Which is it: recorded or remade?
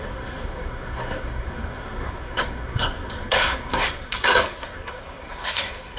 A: remade